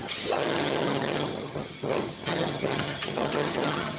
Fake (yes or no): yes